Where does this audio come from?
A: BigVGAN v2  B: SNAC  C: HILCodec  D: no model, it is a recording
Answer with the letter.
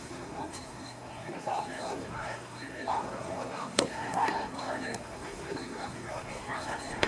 B